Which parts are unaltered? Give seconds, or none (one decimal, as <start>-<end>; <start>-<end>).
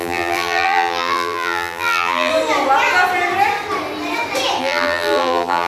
2.3-4.6